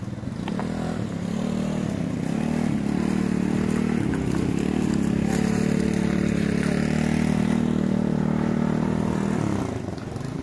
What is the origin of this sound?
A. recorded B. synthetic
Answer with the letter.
A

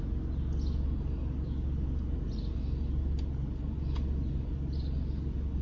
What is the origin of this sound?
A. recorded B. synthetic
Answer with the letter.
A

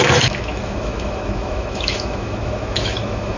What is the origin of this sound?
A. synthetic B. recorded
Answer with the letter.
A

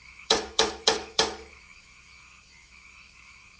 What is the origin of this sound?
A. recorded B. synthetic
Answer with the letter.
B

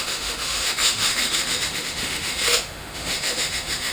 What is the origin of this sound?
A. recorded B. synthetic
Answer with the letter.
B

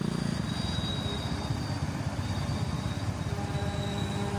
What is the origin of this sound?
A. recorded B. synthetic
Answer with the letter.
A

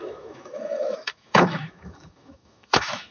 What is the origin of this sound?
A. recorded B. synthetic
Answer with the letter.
B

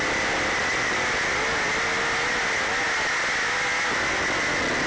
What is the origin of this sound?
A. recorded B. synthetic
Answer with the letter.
A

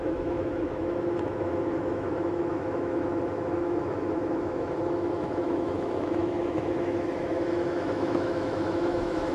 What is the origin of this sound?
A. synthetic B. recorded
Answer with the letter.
A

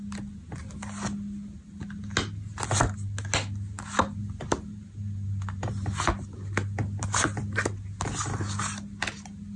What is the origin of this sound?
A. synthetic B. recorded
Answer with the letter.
B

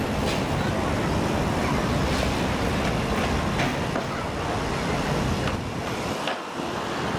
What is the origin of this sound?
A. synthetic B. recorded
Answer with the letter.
B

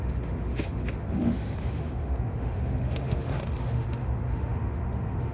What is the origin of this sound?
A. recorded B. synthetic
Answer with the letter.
B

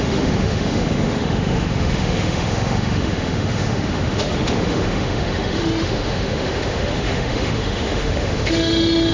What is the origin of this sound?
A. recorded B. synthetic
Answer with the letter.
B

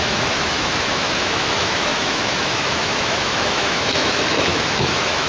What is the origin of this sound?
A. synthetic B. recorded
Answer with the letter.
A